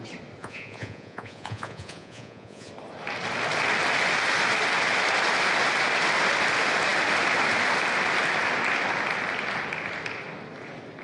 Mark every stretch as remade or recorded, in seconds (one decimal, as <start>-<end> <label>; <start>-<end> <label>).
0.0-0.4 recorded; 0.4-2.7 remade; 2.7-11.0 recorded

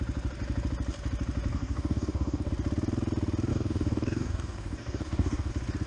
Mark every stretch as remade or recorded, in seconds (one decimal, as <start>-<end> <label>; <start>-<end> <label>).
0.0-1.5 recorded; 1.5-2.5 remade; 2.5-3.5 recorded; 3.5-5.5 remade; 5.5-5.9 recorded

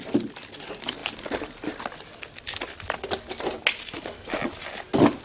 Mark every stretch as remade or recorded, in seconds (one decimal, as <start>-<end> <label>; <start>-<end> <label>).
0.0-5.2 recorded

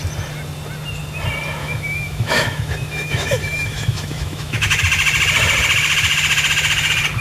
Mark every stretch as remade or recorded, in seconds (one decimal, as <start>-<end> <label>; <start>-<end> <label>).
0.0-1.6 recorded; 1.6-4.8 remade; 4.8-7.2 recorded

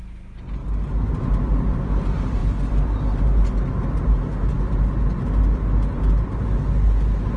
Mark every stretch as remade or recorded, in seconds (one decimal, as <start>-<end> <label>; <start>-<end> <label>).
0.0-7.4 recorded

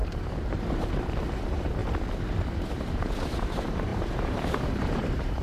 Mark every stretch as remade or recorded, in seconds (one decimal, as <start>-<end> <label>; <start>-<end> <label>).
0.0-1.8 remade; 1.8-2.5 recorded; 2.5-5.4 remade